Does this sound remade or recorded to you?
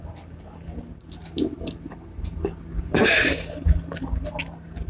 recorded